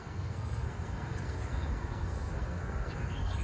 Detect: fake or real fake